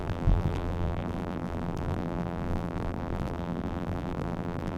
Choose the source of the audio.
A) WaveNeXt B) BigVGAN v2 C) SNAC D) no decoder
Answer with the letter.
B